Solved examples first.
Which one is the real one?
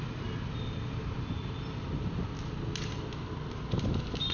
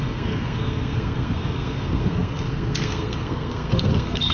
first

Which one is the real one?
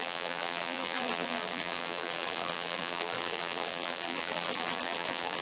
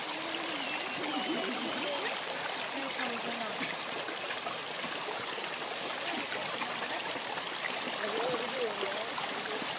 second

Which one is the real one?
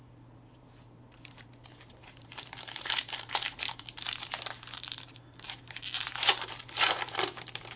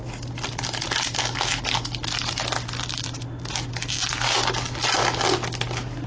second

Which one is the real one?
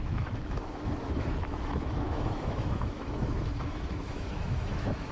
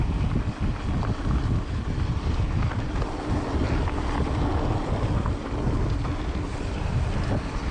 second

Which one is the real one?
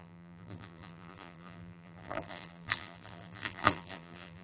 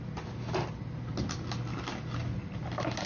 second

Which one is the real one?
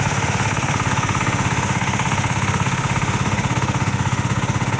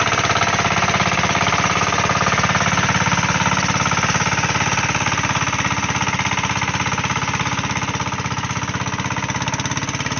second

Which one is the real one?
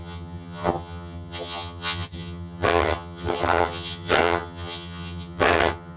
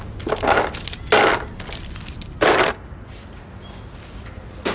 second